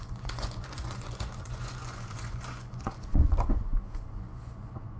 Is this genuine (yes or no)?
no